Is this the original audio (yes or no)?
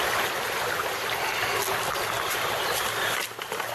yes